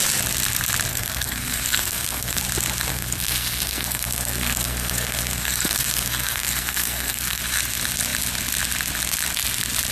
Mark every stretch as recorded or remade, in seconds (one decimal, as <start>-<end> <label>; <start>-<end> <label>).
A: 0.0-0.9 recorded; 0.9-2.4 remade; 2.4-2.9 recorded; 2.9-7.4 remade; 7.4-9.9 recorded